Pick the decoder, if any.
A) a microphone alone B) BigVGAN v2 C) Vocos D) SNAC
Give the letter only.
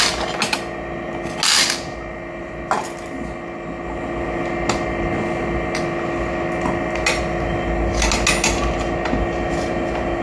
A